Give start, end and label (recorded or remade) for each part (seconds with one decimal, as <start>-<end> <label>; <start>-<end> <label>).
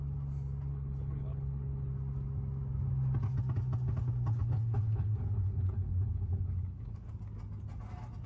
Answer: 0.0-0.7 recorded; 0.7-1.9 remade; 1.9-4.4 recorded; 4.4-7.1 remade; 7.1-8.3 recorded